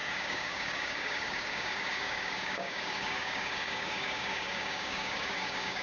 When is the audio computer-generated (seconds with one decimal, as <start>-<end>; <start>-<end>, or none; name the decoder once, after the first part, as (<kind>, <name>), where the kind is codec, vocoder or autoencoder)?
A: 0.0-5.8 (codec, DAC)